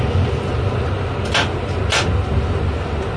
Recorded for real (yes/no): yes